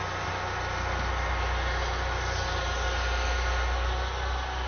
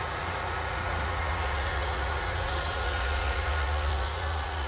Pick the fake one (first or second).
second